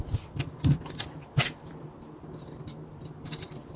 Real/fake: real